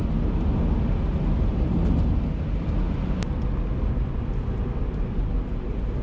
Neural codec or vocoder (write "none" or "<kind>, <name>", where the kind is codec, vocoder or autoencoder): none